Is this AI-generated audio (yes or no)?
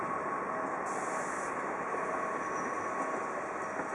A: no